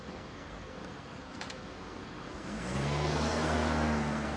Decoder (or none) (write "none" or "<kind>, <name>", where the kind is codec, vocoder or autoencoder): codec, SNAC